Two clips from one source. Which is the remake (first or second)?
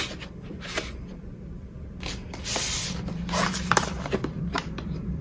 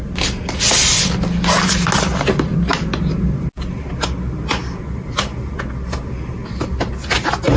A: first